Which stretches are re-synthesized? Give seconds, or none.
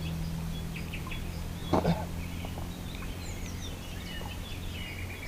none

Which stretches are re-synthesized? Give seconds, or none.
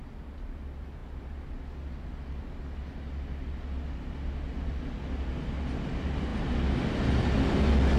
none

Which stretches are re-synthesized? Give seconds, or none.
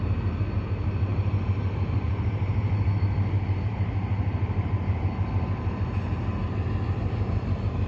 1.1-5.8 (vocoder, BigVGAN v2)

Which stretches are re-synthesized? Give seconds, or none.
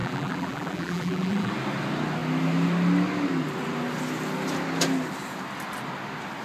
0.0-1.5 (vocoder, BigVGAN v2)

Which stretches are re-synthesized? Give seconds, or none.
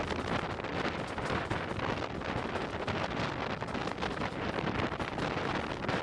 0.7-2.0 (vocoder, BigVGAN v2); 3.8-5.5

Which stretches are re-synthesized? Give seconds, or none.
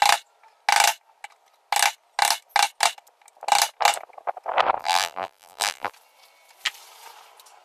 4.8-5.9 (vocoder, BigVGAN v2)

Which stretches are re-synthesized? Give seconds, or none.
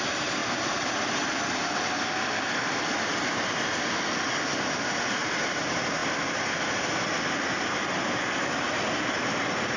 0.4-3.9 (vocoder, BigVGAN v2); 6.0-6.5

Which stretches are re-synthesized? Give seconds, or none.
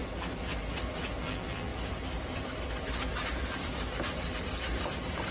1.2-1.7 (vocoder, BigVGAN v2)